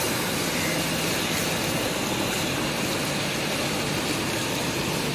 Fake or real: real